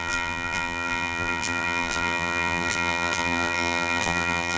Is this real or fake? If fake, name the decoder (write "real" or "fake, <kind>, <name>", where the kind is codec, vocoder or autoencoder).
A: fake, vocoder, BigVGAN v2